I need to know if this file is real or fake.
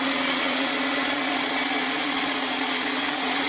fake